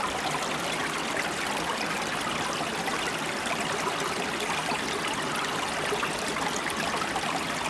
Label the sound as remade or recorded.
recorded